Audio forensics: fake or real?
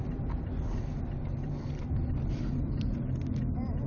real